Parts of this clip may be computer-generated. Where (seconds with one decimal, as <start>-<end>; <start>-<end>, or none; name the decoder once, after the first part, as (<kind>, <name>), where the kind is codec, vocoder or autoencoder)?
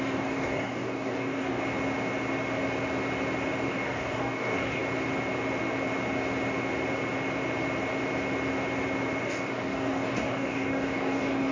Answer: 0.0-1.6 (codec, DAC); 3.7-4.8; 9.2-11.5